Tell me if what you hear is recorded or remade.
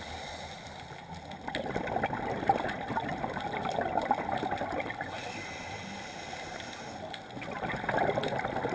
recorded